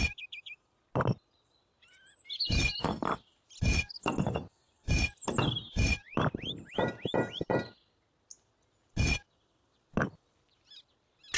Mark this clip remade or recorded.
recorded